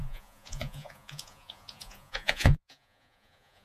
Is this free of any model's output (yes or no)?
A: no